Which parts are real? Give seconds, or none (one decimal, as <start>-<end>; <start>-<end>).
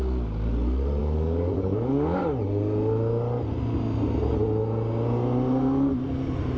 0.0-1.0; 2.2-6.6